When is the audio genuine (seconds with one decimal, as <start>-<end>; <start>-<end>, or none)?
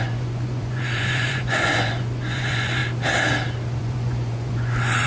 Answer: 2.8-3.8